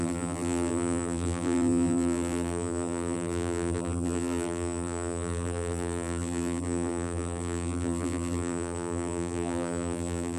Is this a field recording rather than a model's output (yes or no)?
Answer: no